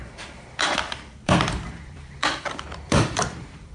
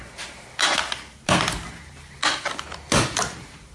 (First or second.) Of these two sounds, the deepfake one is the first